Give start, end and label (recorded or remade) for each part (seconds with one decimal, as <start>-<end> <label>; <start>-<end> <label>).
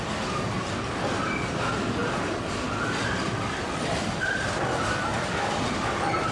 0.0-6.3 recorded